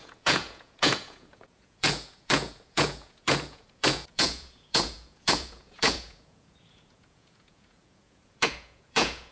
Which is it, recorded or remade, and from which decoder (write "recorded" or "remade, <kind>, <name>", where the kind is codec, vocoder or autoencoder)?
remade, vocoder, Vocos